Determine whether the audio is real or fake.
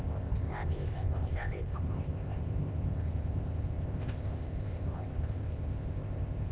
fake